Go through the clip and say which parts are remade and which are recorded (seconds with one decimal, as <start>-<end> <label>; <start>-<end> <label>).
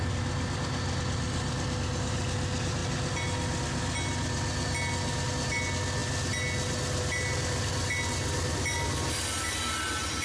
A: 0.0-10.2 recorded